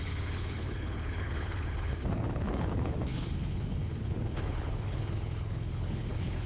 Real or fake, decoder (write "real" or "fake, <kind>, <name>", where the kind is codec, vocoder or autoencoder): fake, codec, HILCodec